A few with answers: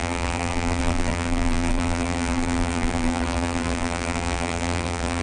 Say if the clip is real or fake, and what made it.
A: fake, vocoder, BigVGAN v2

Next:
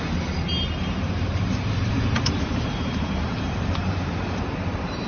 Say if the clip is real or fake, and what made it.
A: fake, vocoder, BigVGAN v2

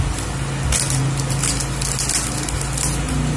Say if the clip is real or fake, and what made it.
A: real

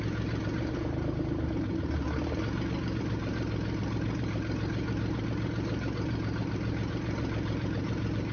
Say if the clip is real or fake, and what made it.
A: fake, vocoder, BigVGAN v2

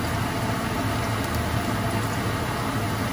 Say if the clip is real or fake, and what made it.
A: real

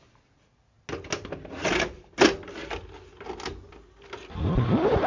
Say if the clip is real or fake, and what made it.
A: real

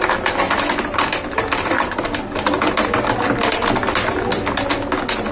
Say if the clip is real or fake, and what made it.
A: real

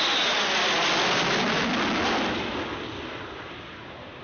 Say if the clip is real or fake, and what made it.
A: real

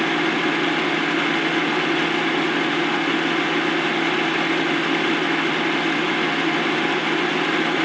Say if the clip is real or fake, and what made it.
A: real